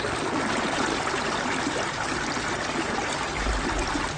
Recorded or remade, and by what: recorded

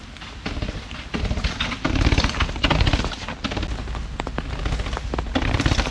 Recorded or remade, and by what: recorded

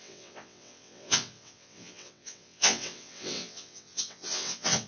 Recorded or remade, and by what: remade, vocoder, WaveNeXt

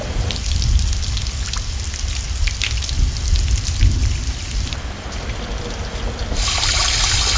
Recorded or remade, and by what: recorded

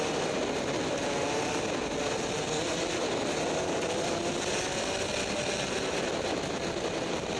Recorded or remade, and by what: recorded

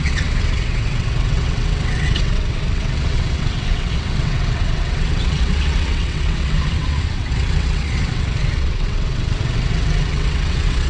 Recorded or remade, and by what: remade, vocoder, WaveNeXt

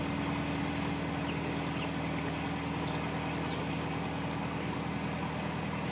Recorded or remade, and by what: recorded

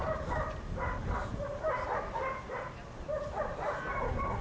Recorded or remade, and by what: recorded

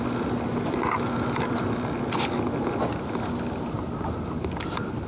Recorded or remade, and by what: recorded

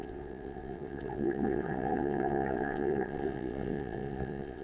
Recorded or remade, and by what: remade, vocoder, WaveNeXt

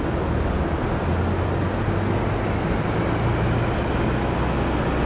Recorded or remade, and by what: recorded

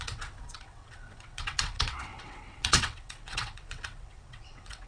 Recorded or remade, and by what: remade, vocoder, WaveNeXt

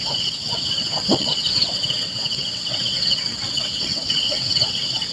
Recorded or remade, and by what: remade, vocoder, WaveNeXt